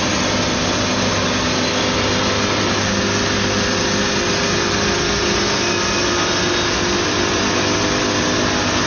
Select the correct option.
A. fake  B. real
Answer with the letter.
B